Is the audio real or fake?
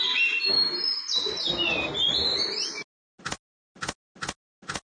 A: real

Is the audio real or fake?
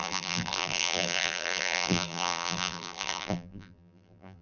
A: fake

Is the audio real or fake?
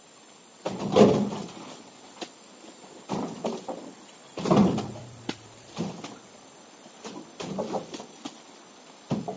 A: real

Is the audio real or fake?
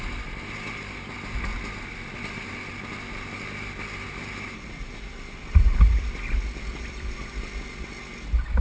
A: real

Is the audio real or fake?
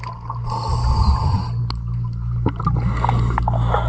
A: real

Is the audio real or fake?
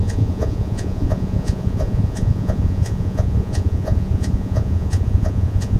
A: fake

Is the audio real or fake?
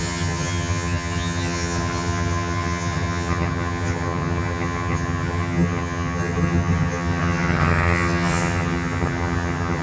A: fake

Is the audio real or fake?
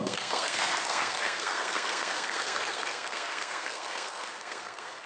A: fake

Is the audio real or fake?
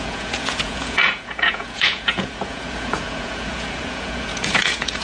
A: fake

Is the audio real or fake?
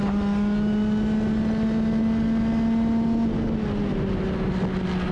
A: real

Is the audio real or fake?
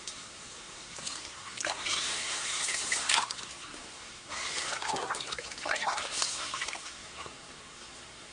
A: fake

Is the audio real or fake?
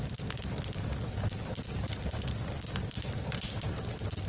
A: real